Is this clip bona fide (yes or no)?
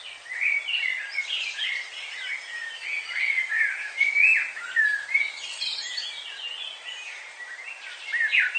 yes